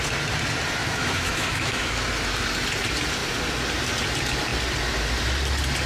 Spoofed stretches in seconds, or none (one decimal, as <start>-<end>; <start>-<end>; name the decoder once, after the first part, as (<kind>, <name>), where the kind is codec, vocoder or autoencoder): 0.8-1.9 (autoencoder, DAC-VAE)